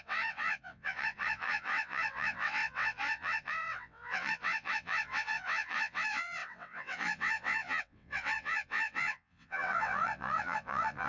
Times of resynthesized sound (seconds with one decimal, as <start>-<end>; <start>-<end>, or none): 0.0-11.1